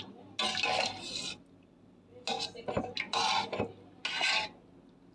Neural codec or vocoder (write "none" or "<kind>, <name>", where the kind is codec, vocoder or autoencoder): none